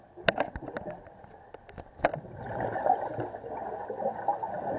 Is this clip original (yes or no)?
yes